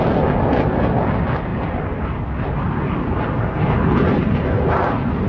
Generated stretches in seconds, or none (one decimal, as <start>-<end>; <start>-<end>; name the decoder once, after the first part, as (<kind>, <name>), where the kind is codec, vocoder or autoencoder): none